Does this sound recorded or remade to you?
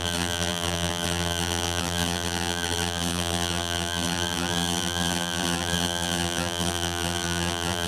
remade